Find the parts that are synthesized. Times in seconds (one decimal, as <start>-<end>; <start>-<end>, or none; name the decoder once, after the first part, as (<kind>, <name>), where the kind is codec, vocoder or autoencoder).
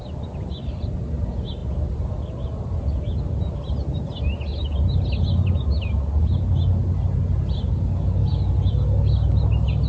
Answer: none